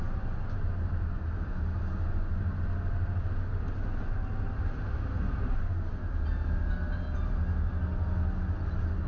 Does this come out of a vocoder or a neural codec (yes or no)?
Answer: no